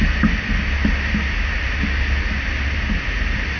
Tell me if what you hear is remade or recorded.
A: recorded